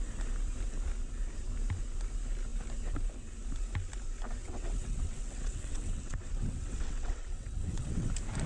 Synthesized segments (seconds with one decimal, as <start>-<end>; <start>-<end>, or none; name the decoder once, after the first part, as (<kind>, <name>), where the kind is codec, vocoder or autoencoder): 4.4-8.1 (vocoder, WaveNeXt)